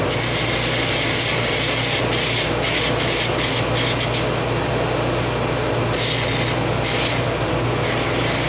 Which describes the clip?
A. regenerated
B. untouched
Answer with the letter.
B